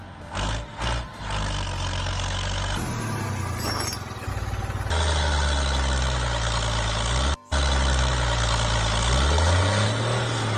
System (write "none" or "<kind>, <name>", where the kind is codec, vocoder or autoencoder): none